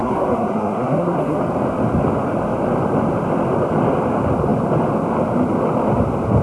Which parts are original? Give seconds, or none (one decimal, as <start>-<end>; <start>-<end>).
1.4-6.4